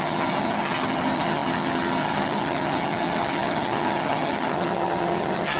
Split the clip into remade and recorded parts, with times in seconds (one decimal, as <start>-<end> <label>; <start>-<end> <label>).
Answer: 0.0-5.6 remade

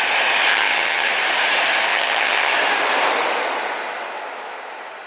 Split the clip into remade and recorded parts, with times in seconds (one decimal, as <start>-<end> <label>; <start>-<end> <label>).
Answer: 0.0-0.5 recorded; 0.5-1.1 remade; 1.1-1.9 recorded; 1.9-2.5 remade; 2.5-5.1 recorded

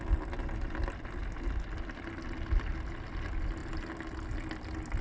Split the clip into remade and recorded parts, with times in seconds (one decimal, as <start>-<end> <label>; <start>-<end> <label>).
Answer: 0.0-5.0 recorded

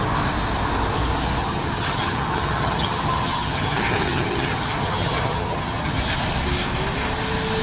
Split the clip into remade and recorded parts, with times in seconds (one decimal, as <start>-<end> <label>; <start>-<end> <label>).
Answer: 0.0-1.4 recorded; 1.4-6.0 remade; 6.0-7.6 recorded

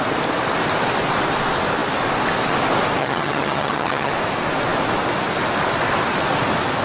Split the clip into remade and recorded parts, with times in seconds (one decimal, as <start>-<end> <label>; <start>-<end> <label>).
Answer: 0.0-3.0 recorded; 3.0-4.1 remade; 4.1-6.8 recorded